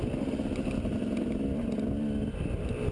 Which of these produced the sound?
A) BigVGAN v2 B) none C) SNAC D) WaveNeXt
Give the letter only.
B